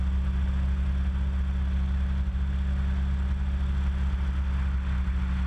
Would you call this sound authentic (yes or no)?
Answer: yes